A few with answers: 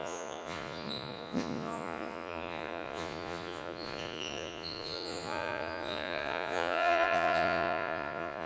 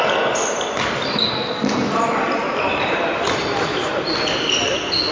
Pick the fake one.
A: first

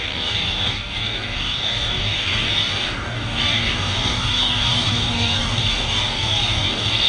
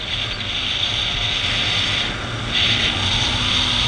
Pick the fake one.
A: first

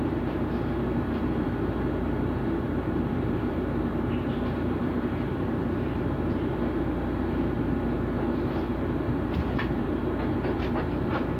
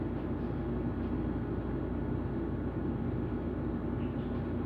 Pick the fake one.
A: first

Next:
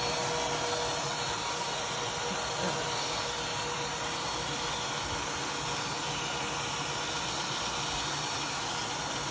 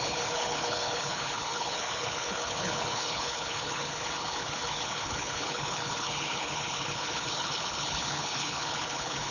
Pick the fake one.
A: second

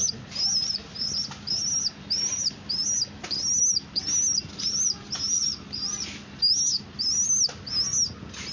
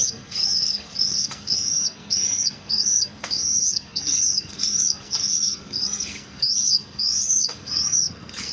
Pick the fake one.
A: second